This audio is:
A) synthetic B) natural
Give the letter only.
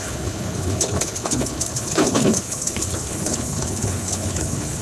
A